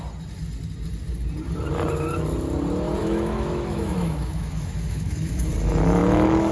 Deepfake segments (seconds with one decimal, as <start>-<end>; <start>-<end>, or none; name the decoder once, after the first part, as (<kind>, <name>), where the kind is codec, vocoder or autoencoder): 3.0-5.5 (autoencoder, DAC-VAE); 6.0-6.5